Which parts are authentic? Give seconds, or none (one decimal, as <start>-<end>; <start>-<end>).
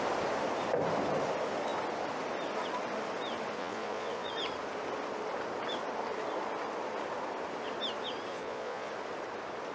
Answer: 0.0-3.6; 4.3-8.3; 8.9-9.7